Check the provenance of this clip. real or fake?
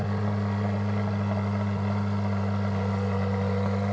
real